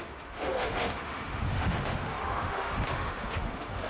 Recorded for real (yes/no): no